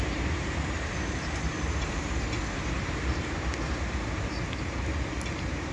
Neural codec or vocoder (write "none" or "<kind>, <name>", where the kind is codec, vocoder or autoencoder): vocoder, BigVGAN v2